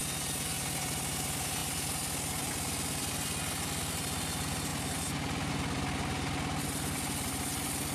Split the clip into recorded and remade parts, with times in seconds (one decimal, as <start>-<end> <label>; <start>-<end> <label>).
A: 0.0-7.9 recorded